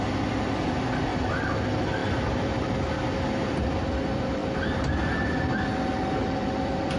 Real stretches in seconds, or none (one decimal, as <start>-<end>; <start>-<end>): 1.1-1.6; 4.4-6.2